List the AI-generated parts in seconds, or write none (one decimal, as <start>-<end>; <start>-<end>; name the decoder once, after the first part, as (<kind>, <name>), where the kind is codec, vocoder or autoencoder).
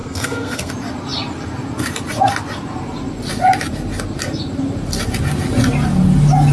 0.0-0.7 (codec, SNAC)